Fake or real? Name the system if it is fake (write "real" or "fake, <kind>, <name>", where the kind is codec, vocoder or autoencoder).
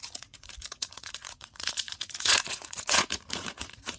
fake, vocoder, Vocos